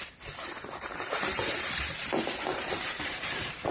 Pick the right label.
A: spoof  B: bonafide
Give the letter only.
A